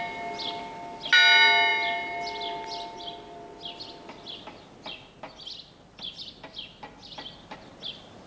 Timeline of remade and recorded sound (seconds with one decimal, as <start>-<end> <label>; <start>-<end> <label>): 0.0-8.3 recorded